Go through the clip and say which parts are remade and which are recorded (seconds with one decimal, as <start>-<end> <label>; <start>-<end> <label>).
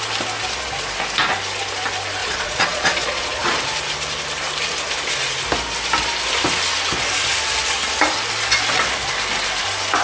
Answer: 0.0-2.2 recorded; 2.2-3.6 remade; 3.6-10.0 recorded